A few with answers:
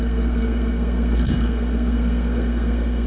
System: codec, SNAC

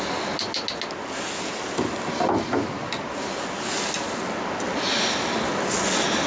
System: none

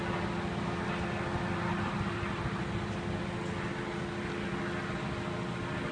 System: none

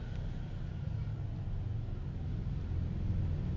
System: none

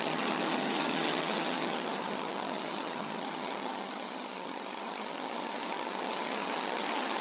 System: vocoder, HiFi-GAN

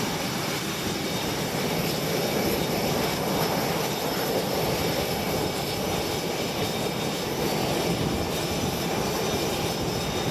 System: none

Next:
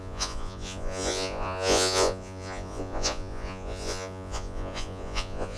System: vocoder, Vocos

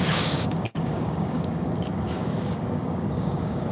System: codec, DAC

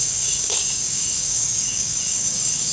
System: codec, DAC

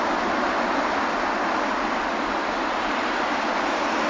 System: vocoder, BigVGAN v2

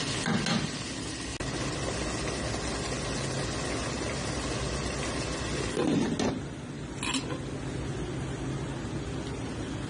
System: none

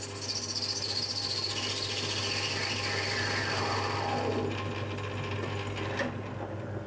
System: none